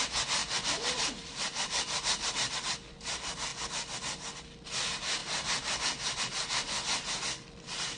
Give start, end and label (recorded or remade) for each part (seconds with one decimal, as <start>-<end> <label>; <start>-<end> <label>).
0.0-0.4 recorded; 0.4-2.5 remade; 2.5-8.0 recorded